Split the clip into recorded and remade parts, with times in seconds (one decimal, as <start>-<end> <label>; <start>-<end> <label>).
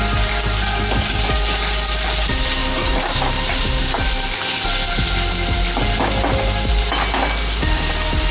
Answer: 0.0-8.3 recorded